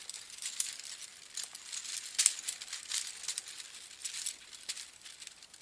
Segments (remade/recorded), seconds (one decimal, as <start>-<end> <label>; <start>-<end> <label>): 0.0-5.6 recorded